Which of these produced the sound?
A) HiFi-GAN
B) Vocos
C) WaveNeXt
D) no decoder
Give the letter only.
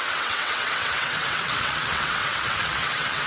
C